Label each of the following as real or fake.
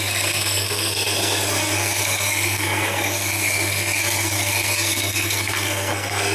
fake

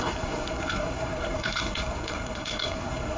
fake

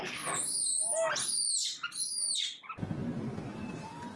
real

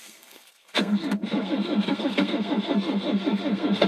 fake